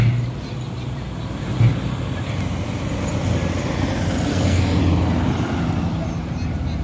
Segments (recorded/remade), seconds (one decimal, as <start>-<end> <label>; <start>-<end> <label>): 0.0-4.3 recorded; 4.3-4.8 remade; 4.8-6.8 recorded